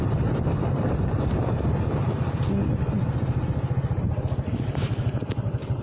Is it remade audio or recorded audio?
recorded